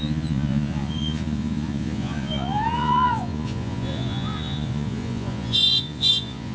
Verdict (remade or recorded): remade